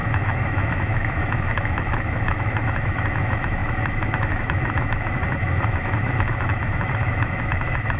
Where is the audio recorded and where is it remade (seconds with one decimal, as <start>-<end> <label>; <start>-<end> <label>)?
0.0-8.0 remade